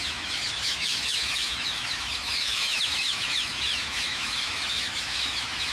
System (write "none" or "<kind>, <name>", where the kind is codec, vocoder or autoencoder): autoencoder, DAC-VAE